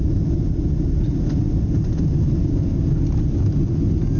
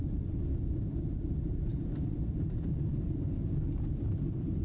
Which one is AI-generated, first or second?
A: second